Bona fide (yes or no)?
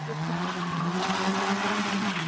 no